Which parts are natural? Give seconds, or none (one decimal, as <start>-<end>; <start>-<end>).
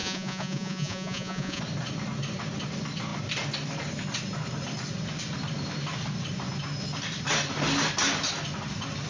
1.6-9.1